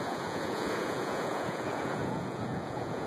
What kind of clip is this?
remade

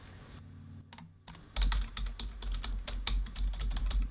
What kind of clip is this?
recorded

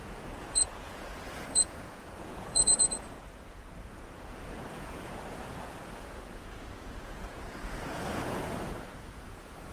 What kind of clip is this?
remade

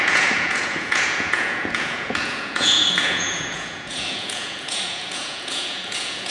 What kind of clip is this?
remade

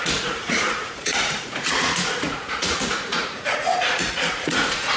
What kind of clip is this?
remade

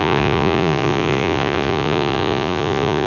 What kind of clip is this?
remade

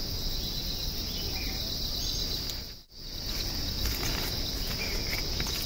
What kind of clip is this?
recorded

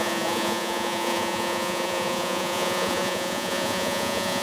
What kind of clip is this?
remade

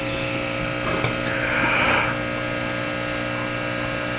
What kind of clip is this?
recorded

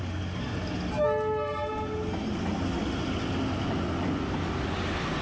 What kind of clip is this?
recorded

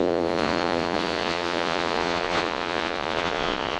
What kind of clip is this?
remade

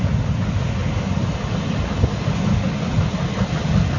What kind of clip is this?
recorded